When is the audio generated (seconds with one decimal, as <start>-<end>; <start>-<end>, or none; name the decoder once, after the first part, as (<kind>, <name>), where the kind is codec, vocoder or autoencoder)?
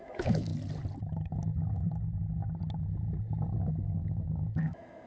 0.0-0.5 (autoencoder, DAC-VAE); 3.6-5.1